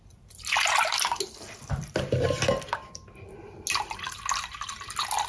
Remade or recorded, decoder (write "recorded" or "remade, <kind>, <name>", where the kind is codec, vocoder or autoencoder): recorded